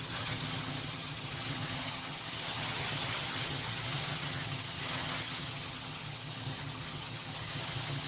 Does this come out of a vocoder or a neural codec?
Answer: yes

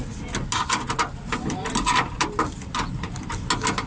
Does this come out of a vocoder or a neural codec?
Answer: no